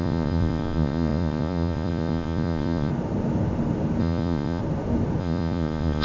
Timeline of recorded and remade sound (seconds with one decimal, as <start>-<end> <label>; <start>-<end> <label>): 0.0-2.9 remade; 2.9-4.0 recorded; 4.0-4.6 remade; 4.6-5.2 recorded; 5.2-6.0 remade